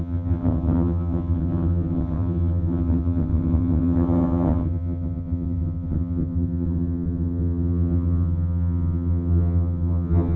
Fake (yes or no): yes